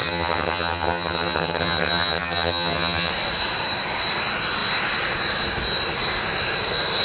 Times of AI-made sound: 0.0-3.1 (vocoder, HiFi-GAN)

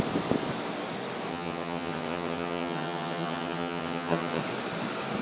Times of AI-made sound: 1.3-4.4 (vocoder, HiFi-GAN)

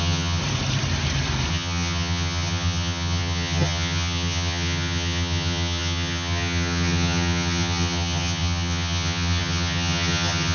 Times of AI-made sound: 0.0-0.4 (vocoder, HiFi-GAN); 1.5-10.5

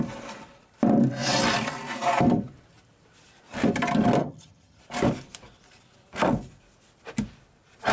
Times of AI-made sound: 4.2-4.8 (vocoder, HiFi-GAN)

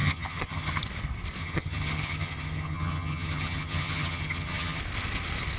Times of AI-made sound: 0.0-0.8 (vocoder, HiFi-GAN); 1.4-4.8

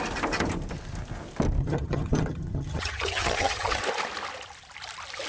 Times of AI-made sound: 1.6-3.8 (vocoder, HiFi-GAN)